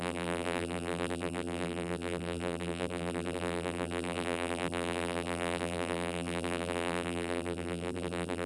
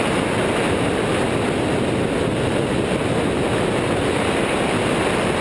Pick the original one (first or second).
second